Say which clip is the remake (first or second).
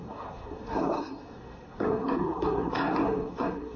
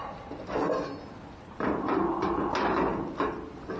first